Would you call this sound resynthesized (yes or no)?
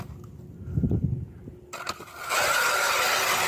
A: no